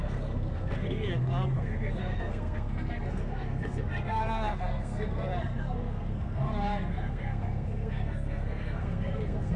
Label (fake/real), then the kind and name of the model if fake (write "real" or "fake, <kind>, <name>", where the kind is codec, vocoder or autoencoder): fake, codec, SNAC